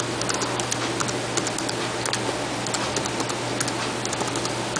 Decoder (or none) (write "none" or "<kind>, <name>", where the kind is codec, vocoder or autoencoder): none